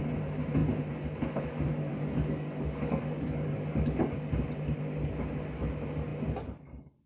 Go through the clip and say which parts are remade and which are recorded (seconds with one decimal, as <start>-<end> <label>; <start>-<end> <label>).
0.0-1.9 recorded; 1.9-4.0 remade; 4.0-7.1 recorded